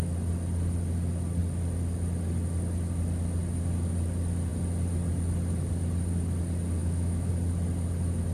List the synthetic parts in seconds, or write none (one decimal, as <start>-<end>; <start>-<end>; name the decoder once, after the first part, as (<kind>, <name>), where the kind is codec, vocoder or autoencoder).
6.8-7.3 (autoencoder, DAC-VAE)